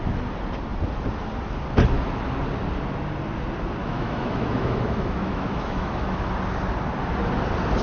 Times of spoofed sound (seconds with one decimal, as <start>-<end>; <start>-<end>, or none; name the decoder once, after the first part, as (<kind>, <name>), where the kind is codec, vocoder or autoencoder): 3.8-6.3 (autoencoder, DAC-VAE)